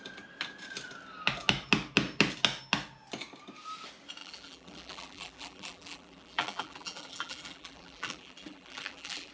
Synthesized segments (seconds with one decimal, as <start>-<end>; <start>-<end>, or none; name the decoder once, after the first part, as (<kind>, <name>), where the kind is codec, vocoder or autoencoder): 4.2-9.3 (vocoder, BigVGAN v2)